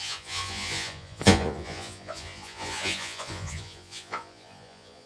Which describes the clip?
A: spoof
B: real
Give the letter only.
A